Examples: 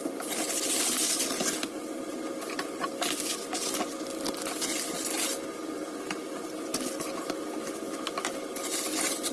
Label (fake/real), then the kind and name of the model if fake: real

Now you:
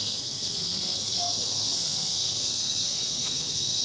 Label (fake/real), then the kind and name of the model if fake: fake, codec, SNAC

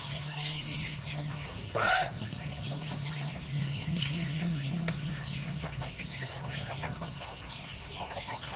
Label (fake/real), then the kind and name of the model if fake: fake, codec, SNAC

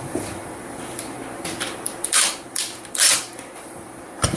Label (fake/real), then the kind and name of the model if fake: fake, vocoder, BigVGAN v2